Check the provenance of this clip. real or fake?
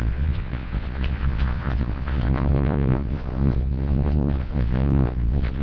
fake